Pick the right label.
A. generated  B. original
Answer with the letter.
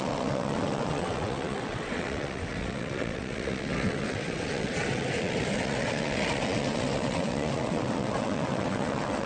A